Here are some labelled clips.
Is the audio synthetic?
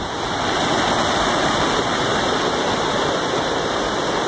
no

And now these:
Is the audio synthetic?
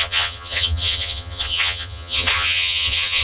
yes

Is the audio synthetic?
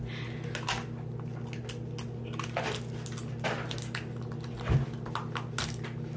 no